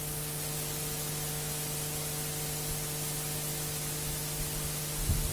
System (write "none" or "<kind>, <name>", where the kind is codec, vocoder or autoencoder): none